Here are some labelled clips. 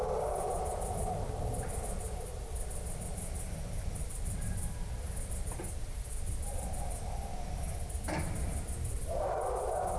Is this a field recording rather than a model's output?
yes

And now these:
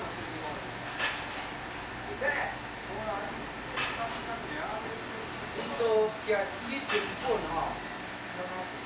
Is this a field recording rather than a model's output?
yes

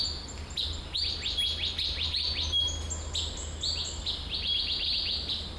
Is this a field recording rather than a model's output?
yes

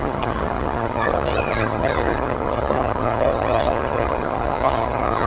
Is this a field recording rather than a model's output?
no